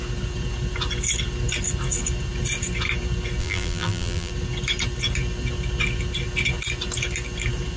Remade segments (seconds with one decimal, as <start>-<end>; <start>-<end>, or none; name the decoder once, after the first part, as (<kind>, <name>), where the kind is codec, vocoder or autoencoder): 3.4-4.3 (vocoder, BigVGAN v2)